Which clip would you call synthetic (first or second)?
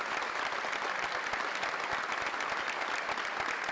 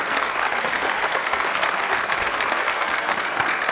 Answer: second